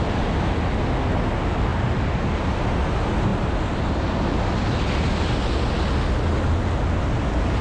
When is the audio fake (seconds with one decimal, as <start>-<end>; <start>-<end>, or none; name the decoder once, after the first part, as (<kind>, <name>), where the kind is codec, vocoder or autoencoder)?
1.7-2.8 (vocoder, BigVGAN v2)